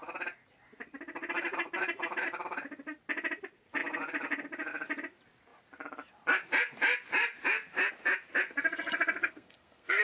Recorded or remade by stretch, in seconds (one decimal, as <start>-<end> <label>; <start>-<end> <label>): 0.0-9.2 recorded; 9.2-10.0 remade